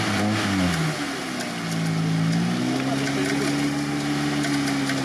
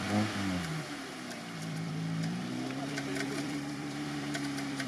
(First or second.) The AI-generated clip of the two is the second